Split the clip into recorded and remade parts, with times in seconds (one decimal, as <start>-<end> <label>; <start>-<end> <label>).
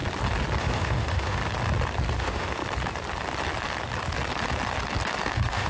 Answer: 0.0-0.6 recorded; 0.6-1.4 remade; 1.4-2.2 recorded; 2.2-2.6 remade; 2.6-5.2 recorded; 5.2-5.7 remade